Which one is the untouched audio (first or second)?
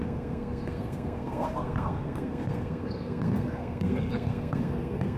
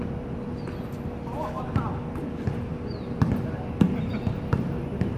second